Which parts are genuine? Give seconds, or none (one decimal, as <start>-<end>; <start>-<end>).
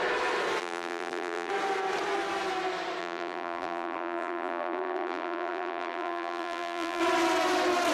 0.0-0.6; 1.5-3.0; 7.0-7.9